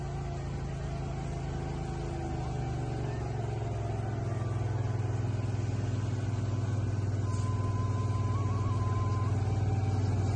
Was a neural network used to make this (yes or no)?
no